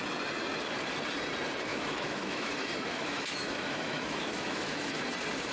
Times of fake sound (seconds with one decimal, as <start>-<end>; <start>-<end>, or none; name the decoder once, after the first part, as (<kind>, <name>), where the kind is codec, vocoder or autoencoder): 1.7-5.0 (autoencoder, DAC-VAE)